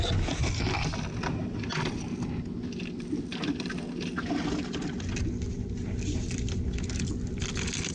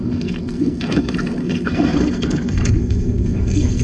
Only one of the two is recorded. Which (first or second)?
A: first